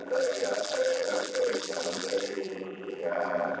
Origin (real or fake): fake